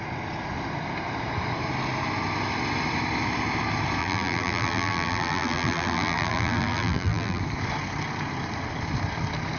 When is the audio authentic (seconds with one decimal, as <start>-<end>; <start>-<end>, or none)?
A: 0.0-4.0; 7.4-9.6